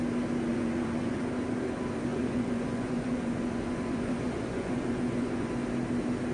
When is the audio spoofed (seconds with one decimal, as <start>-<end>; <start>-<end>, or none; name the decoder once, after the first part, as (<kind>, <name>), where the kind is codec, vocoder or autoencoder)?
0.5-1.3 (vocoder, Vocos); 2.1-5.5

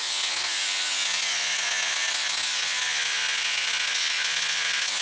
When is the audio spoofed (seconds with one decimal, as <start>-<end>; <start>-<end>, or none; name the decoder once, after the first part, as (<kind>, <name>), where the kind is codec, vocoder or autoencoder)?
none

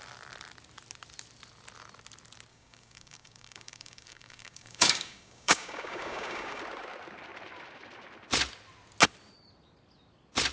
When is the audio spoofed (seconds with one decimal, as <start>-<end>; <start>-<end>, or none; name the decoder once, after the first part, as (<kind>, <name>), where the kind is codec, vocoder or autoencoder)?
2.5-6.6 (codec, DAC)